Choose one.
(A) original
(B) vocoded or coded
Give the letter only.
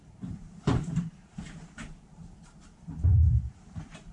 B